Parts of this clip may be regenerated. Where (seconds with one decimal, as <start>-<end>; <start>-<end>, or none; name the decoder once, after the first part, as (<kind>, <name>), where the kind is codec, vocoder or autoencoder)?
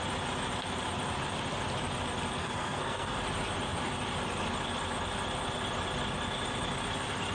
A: 2.4-3.2 (codec, SNAC)